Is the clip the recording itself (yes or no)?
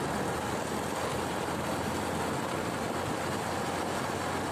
yes